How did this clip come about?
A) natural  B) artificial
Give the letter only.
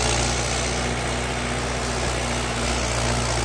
A